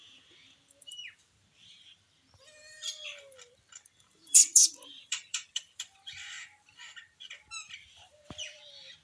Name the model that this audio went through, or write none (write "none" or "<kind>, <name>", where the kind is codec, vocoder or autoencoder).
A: vocoder, BigVGAN v2